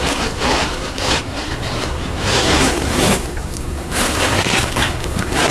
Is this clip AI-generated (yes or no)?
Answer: yes